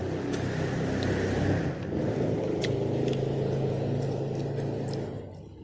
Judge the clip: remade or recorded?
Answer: recorded